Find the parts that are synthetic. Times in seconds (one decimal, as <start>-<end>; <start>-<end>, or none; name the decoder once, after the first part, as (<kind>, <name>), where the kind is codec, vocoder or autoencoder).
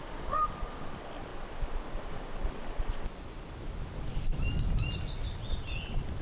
0.0-6.2 (vocoder, BigVGAN v2)